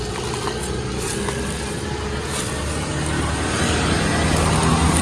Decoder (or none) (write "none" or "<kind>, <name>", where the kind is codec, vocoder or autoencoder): none